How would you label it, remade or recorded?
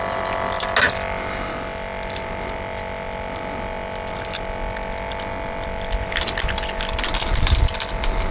recorded